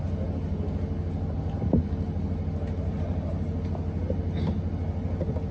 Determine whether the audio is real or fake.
real